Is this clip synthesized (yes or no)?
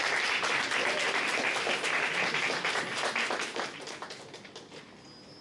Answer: no